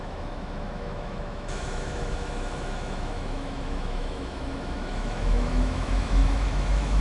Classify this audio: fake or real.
fake